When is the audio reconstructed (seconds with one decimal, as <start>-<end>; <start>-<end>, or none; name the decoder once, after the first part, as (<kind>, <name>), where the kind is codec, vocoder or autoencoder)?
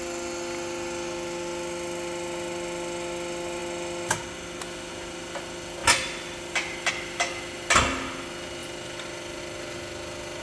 none